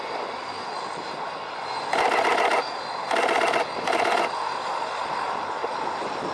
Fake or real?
real